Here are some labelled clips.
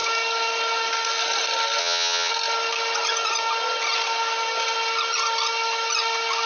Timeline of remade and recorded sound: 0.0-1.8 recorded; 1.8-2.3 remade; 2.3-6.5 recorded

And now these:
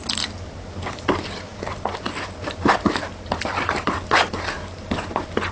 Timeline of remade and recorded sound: 0.0-5.5 recorded

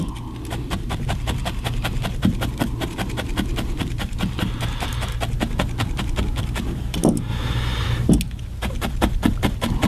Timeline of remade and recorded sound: 0.0-9.9 recorded

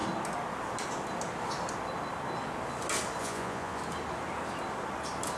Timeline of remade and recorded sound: 0.0-3.2 recorded; 3.2-3.8 remade; 3.8-5.4 recorded